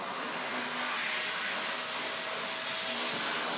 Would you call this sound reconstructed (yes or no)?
no